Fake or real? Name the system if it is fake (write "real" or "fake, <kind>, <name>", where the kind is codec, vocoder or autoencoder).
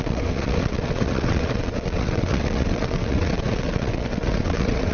fake, vocoder, WaveNeXt